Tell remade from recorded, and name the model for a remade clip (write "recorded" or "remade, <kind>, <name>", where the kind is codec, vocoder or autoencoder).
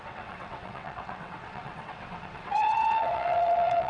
remade, vocoder, WaveNeXt